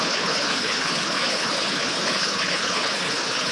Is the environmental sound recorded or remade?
remade